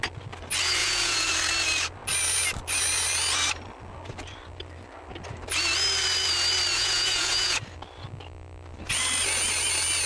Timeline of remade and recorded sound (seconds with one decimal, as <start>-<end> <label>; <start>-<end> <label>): 0.0-0.8 recorded; 0.8-1.3 remade; 1.3-6.7 recorded; 6.7-7.6 remade; 7.6-10.1 recorded